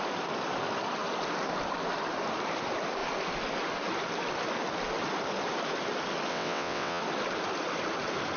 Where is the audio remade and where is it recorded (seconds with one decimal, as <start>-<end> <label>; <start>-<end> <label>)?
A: 0.0-6.3 recorded; 6.3-7.0 remade; 7.0-8.4 recorded